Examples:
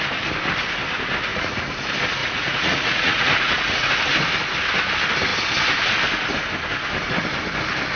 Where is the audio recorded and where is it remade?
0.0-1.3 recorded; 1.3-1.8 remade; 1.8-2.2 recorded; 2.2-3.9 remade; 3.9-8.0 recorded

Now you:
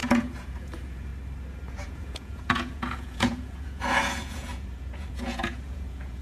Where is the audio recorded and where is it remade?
0.0-1.1 remade; 1.1-1.7 recorded; 1.7-6.2 remade

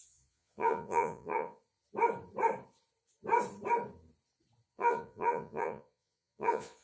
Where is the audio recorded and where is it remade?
0.0-1.6 remade; 1.6-4.7 recorded; 4.7-6.8 remade

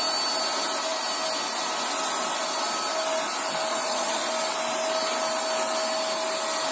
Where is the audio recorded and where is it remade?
0.0-3.7 recorded; 3.7-4.3 remade; 4.3-6.7 recorded

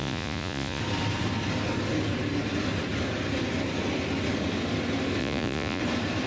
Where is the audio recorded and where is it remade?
0.0-0.8 remade; 0.8-5.2 recorded; 5.2-5.8 remade; 5.8-6.3 recorded

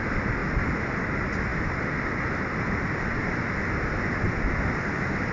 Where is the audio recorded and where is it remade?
0.0-5.3 recorded

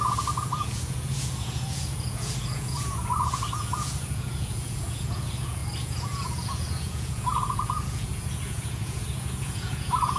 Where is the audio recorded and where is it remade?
0.0-10.2 remade